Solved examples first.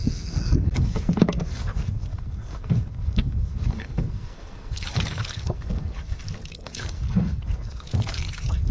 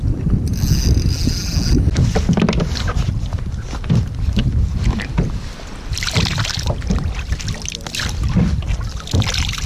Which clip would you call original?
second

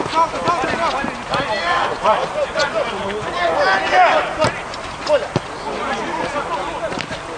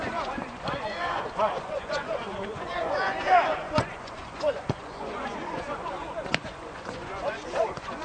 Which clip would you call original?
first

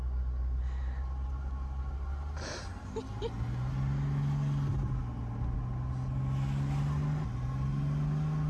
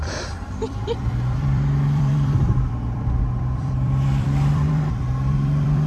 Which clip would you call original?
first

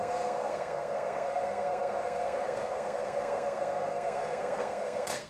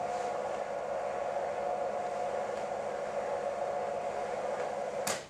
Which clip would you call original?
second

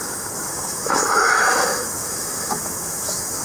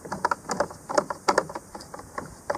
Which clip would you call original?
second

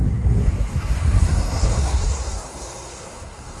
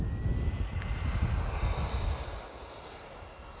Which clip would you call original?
second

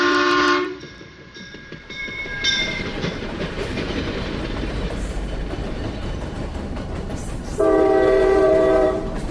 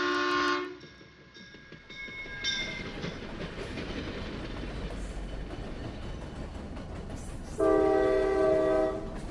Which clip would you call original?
second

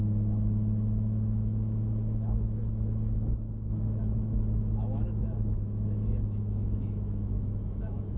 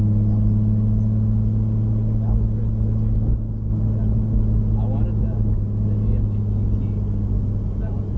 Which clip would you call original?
second